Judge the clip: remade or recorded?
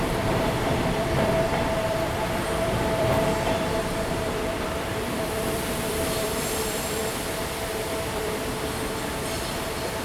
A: remade